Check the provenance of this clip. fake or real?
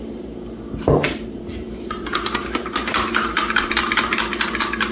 fake